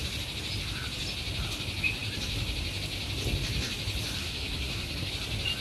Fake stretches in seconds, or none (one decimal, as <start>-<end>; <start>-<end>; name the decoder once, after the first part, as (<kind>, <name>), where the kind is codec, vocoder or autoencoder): 4.2-5.1 (codec, SNAC)